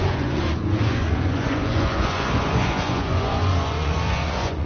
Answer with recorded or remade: remade